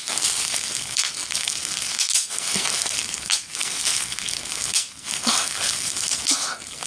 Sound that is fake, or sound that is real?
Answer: fake